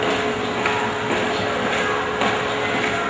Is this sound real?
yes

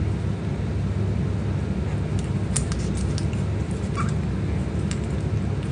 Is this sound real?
yes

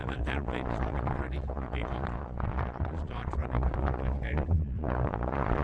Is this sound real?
no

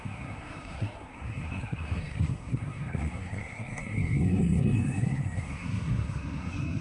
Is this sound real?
no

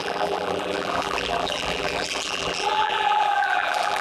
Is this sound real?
no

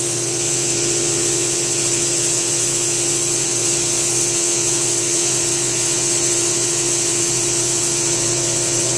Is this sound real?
no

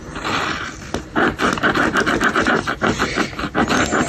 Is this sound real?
yes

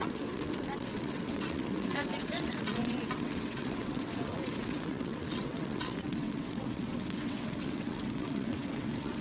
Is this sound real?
no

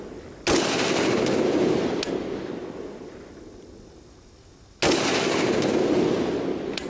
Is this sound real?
yes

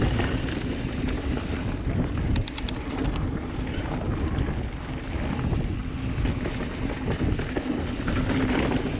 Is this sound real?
yes